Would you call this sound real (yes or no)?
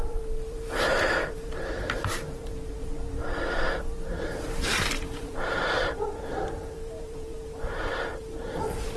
no